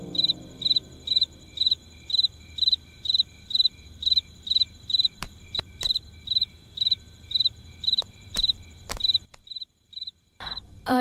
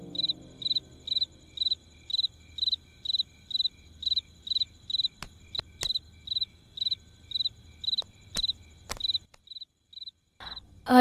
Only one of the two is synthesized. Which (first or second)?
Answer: first